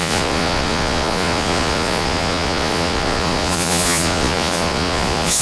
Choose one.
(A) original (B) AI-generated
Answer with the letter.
B